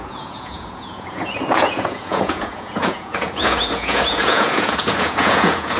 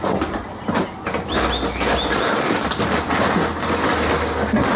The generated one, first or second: first